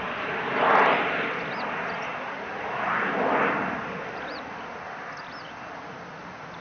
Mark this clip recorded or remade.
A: recorded